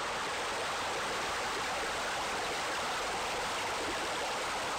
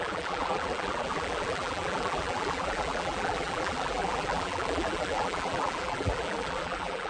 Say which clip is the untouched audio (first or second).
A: first